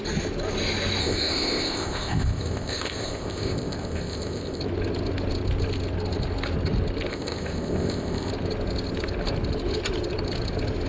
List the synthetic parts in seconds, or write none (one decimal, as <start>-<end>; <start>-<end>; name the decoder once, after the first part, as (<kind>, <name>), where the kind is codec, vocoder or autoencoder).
1.0-4.6 (codec, ZipCodec); 7.1-8.3